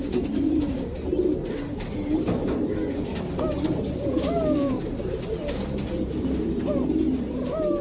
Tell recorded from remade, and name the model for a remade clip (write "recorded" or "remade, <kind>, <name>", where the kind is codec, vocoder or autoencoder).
recorded